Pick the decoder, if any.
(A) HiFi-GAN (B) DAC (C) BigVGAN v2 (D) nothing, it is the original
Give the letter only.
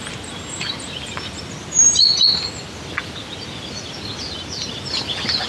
D